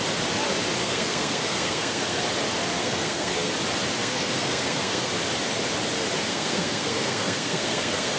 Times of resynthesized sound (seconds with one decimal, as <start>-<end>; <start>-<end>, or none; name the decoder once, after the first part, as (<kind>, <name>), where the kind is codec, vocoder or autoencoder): 0.8-2.2 (codec, SNAC); 2.8-3.5; 4.0-5.1; 6.3-8.2